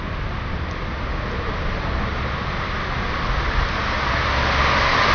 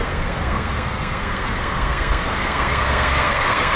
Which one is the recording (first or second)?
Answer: first